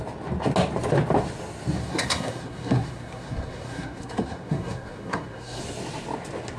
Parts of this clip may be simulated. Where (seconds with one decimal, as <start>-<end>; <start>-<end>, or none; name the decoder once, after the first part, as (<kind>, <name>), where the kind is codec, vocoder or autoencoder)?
1.8-5.6 (codec, SNAC)